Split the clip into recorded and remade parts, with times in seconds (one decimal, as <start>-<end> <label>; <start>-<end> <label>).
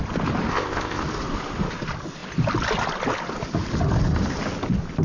0.0-0.5 recorded; 0.5-1.0 remade; 1.0-5.0 recorded